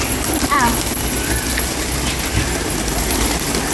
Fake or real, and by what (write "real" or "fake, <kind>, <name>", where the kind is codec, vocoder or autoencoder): real